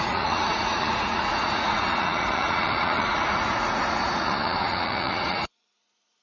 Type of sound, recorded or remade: remade